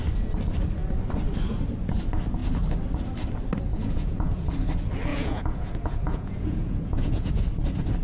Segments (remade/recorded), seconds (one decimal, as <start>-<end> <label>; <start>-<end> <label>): 0.0-3.7 recorded; 3.7-4.5 remade; 4.5-5.1 recorded; 5.1-7.4 remade; 7.4-8.0 recorded